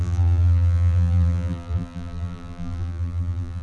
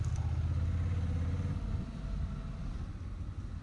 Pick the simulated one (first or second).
first